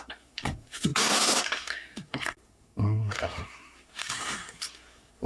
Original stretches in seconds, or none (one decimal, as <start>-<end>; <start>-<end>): none